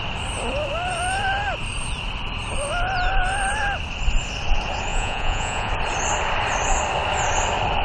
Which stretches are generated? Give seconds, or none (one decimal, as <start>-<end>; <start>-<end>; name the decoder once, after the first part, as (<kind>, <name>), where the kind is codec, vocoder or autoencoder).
4.9-5.7 (vocoder, Vocos)